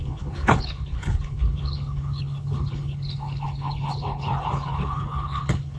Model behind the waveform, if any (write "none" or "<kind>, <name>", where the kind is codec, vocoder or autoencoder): codec, HILCodec